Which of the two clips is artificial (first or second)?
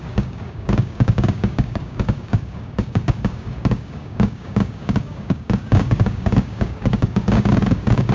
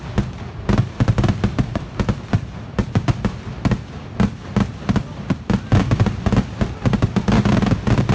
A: first